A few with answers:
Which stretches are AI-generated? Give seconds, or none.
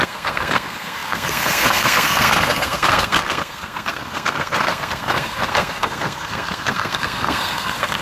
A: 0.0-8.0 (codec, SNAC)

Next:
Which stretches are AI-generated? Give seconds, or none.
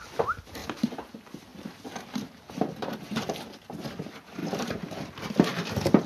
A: 0.6-1.1 (vocoder, BigVGAN v2); 4.4-5.2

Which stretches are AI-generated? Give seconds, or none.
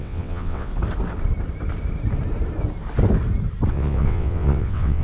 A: 0.0-0.7 (vocoder, WaveNeXt); 3.7-5.0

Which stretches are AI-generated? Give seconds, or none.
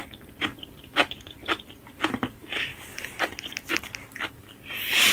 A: 2.7-3.8 (vocoder, BigVGAN v2)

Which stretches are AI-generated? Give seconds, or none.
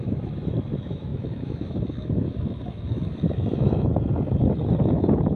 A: 0.0-3.9 (autoencoder, DAC-VAE); 4.8-5.4